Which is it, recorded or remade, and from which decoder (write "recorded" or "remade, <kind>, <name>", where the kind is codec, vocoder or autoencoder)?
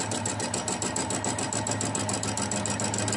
recorded